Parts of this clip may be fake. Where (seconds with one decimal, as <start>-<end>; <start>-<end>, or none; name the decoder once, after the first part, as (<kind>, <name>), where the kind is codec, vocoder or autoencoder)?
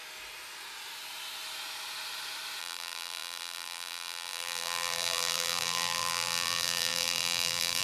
2.6-7.8 (vocoder, BigVGAN v2)